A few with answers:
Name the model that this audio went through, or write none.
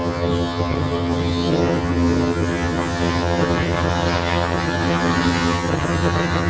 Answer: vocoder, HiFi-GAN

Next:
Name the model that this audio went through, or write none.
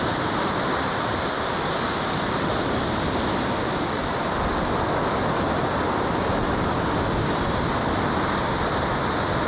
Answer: none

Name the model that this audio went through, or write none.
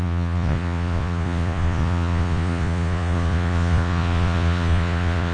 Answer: vocoder, Vocos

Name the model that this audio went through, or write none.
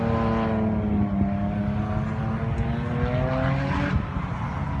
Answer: none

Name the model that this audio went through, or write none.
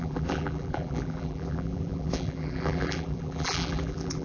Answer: vocoder, BigVGAN v2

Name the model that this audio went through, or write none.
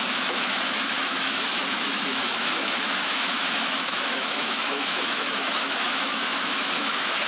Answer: autoencoder, DAC-VAE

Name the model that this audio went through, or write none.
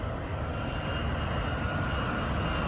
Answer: none